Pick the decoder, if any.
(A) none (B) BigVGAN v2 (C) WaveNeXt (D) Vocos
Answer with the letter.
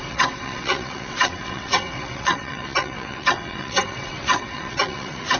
C